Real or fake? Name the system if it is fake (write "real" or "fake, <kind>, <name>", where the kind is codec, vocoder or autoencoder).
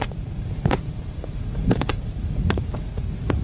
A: fake, vocoder, Vocos